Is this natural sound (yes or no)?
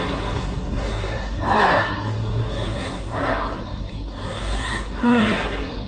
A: no